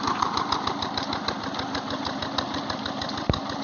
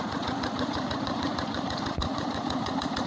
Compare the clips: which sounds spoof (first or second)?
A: second